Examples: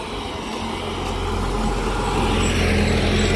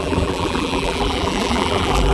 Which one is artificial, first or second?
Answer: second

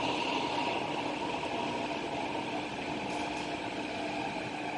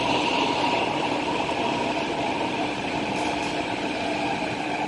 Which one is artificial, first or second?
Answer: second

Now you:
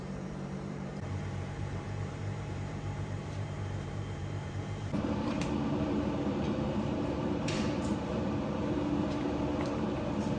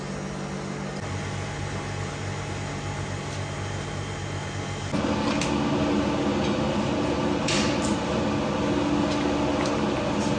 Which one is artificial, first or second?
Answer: first